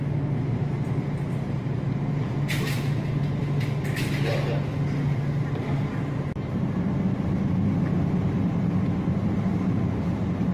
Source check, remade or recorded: recorded